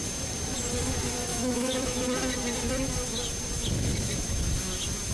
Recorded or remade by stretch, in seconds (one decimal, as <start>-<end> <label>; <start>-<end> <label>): 0.0-1.3 recorded; 1.3-2.0 remade; 2.0-5.1 recorded